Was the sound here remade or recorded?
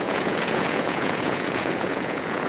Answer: remade